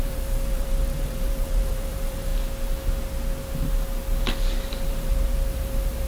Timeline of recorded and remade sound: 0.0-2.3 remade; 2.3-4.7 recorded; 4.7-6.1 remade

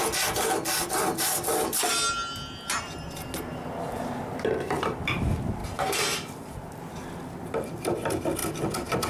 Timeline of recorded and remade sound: 0.0-9.1 recorded

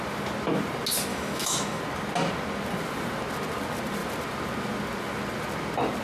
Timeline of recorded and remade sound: 0.0-1.1 recorded; 1.1-1.8 remade; 1.8-6.0 recorded